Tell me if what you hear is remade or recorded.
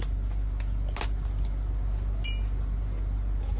recorded